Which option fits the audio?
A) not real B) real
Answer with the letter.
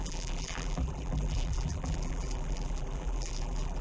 A